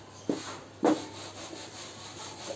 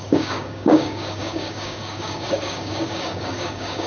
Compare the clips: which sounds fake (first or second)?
second